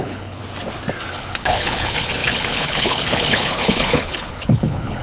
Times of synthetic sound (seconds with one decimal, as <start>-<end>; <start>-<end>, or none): 0.0-0.4; 1.1-5.0